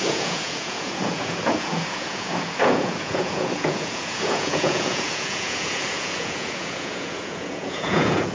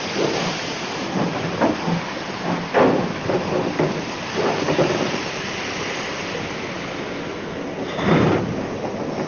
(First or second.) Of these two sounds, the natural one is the second